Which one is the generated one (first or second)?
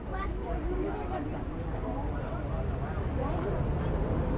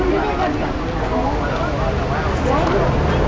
first